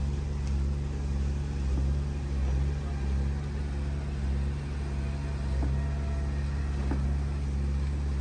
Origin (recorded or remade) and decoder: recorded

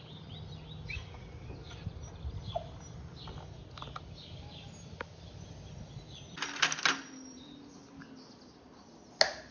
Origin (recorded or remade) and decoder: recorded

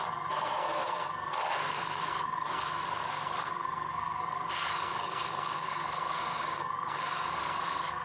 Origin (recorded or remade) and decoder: remade, codec, SNAC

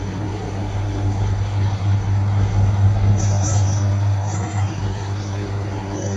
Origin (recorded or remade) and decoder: remade, codec, SNAC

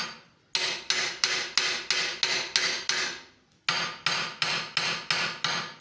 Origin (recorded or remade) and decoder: recorded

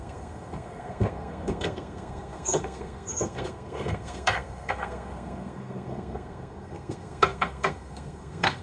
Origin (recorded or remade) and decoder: remade, codec, SNAC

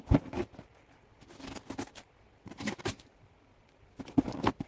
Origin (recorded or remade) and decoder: recorded